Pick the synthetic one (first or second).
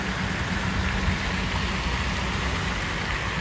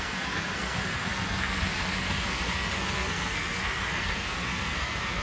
second